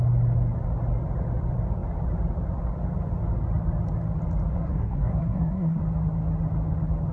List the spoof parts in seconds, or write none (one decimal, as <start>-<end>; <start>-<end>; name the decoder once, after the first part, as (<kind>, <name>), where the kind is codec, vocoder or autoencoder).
4.5-5.8 (codec, SNAC)